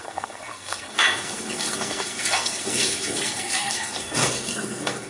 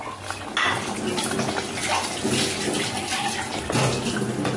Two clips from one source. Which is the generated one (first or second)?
first